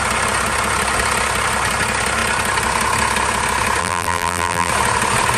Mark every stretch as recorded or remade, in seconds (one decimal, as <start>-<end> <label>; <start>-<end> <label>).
0.0-3.8 recorded; 3.8-4.7 remade; 4.7-5.4 recorded